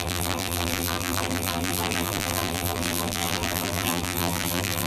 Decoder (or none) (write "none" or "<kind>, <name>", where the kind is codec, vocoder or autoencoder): vocoder, BigVGAN v2